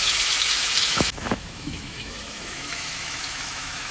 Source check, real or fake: fake